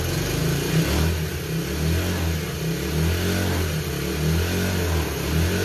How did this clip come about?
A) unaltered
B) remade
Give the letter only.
A